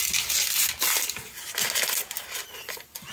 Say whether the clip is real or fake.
real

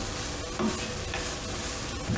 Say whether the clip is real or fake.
real